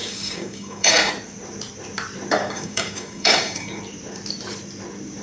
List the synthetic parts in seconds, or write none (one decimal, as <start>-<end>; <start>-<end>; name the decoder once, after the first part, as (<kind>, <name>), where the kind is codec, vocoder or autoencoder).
0.0-1.1 (codec, DAC); 2.4-3.8